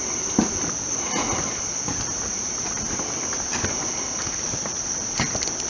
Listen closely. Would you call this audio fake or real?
real